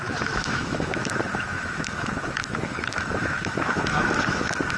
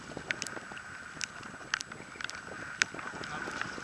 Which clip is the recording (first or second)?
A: second